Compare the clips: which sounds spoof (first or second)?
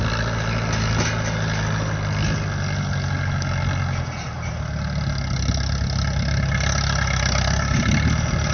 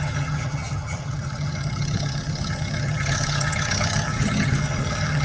second